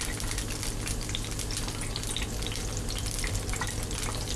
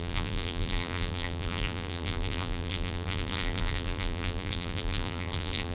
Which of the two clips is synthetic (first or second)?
second